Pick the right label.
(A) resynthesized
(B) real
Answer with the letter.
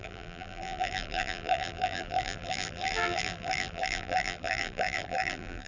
A